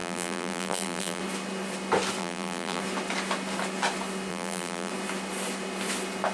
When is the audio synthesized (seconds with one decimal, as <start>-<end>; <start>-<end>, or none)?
0.0-1.2; 2.2-2.8; 4.3-4.9